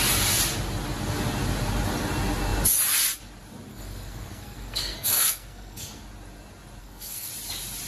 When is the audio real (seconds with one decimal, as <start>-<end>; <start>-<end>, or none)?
0.0-3.7; 6.0-6.8; 7.3-7.9